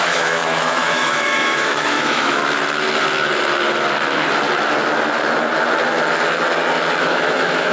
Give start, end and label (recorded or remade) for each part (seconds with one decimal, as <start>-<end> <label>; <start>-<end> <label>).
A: 0.0-2.4 remade; 2.4-7.0 recorded; 7.0-7.7 remade